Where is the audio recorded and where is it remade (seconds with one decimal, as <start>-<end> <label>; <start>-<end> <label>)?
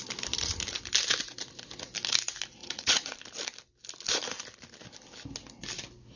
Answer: 0.0-2.6 recorded; 2.6-3.1 remade; 3.1-6.2 recorded